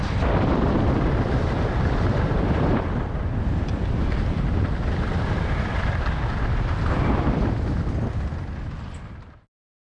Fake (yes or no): yes